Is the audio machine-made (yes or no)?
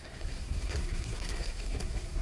yes